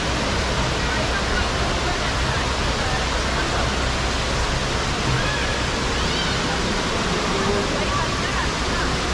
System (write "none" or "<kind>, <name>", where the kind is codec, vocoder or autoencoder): none